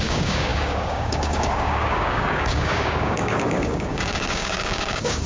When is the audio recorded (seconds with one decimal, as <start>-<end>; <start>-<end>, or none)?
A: none